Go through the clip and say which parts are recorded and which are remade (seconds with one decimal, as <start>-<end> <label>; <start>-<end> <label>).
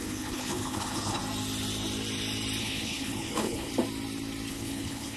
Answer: 0.0-1.2 remade; 1.2-2.6 recorded; 2.6-3.7 remade; 3.7-4.5 recorded; 4.5-5.2 remade